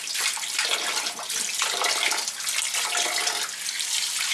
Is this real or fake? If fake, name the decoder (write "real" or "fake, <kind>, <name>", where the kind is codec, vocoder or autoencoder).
real